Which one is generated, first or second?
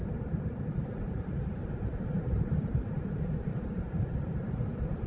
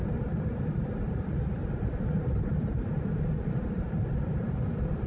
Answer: first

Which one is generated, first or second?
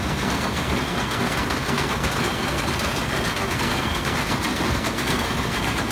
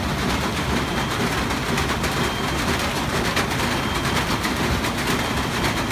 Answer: first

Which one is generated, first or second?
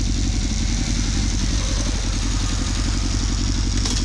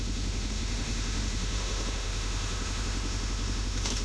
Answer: second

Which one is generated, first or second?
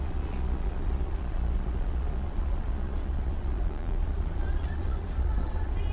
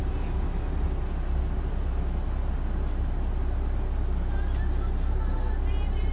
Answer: first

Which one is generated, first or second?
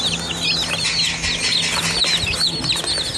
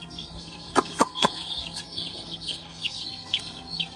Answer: second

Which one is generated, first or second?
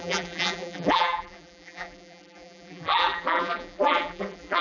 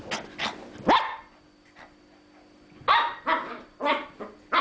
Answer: first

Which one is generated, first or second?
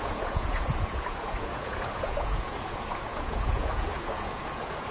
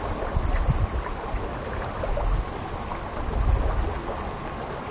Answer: first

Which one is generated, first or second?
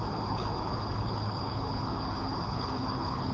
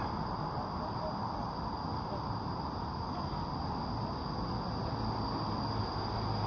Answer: first